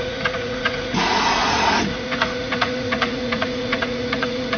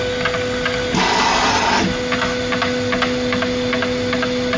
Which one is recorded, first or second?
second